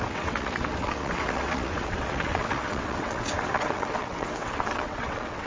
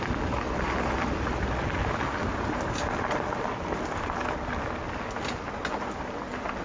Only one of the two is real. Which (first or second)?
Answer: second